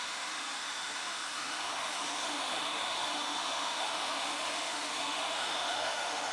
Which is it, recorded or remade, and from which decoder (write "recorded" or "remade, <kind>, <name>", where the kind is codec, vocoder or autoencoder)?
remade, autoencoder, DAC-VAE